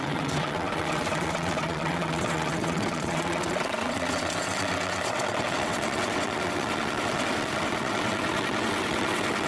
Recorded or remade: remade